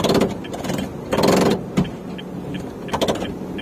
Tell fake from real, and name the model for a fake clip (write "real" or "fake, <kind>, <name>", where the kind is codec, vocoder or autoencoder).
real